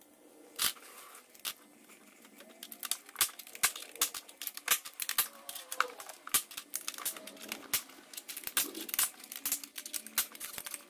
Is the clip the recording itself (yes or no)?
yes